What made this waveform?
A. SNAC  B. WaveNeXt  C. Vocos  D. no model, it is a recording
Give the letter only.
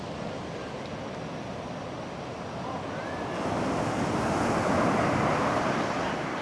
D